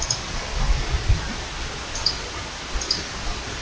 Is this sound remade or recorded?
recorded